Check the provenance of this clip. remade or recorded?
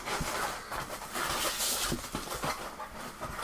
recorded